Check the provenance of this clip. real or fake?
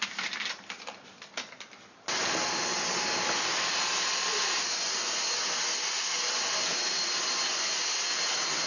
real